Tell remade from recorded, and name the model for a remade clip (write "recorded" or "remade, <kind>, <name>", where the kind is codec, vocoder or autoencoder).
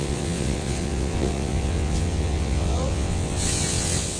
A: remade, vocoder, WaveNeXt